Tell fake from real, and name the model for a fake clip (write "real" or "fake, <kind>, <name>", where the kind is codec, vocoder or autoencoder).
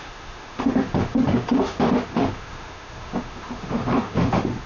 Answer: fake, autoencoder, DAC-VAE